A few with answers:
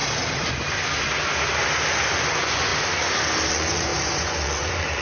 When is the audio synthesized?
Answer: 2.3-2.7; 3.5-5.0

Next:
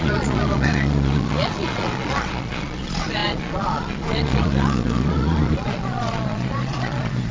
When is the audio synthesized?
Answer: 0.0-7.3

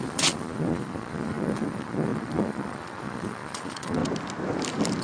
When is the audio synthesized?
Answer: 0.0-4.0

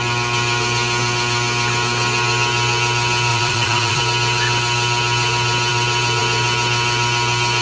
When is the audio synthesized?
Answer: 3.3-4.0

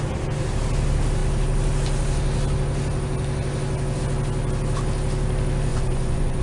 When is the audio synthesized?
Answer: 5.7-6.4